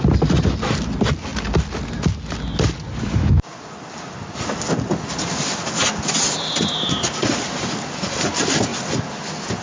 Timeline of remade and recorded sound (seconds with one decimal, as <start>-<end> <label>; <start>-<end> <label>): 0.0-9.6 recorded